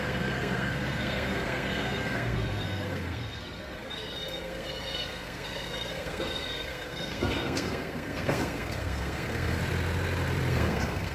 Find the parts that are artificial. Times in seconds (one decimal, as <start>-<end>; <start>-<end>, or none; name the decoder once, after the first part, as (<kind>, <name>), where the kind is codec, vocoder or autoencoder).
0.0-9.6 (codec, SNAC); 10.5-11.1